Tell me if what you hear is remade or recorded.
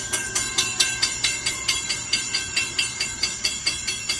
remade